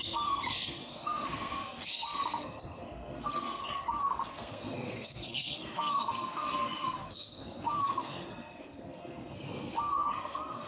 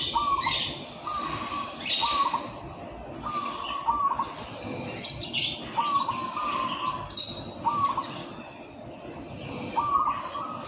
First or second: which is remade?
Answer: first